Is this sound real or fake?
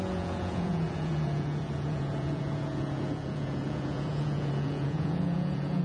fake